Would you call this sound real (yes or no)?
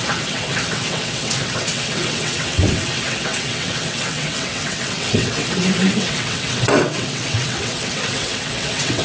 no